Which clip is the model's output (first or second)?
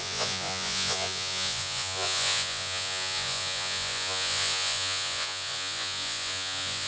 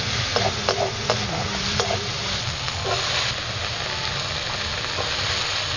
first